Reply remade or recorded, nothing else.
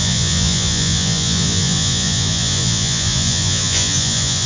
remade